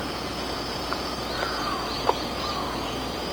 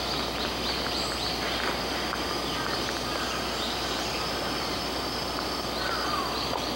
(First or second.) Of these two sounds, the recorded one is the second